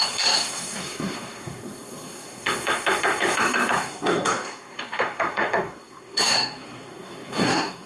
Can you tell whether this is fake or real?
fake